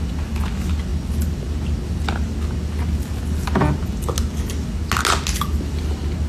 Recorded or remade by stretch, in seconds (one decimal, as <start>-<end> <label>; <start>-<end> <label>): 0.0-6.3 recorded